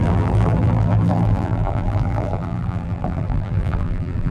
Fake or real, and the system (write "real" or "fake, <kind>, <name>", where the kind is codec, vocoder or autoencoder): fake, vocoder, BigVGAN v2